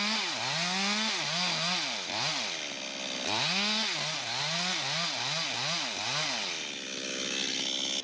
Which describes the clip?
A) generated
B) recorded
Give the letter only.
B